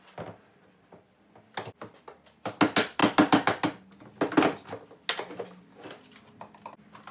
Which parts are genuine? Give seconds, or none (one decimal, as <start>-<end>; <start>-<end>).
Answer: 0.0-7.1